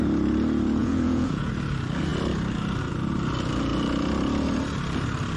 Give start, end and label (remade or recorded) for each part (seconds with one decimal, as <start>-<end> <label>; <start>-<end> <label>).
0.0-0.8 recorded; 0.8-1.5 remade; 1.5-5.4 recorded